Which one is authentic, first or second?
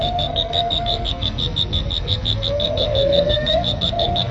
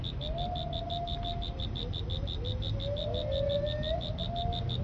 second